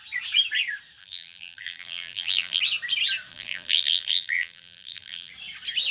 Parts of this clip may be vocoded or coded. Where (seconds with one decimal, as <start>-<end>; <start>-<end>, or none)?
1.0-2.6; 3.3-5.3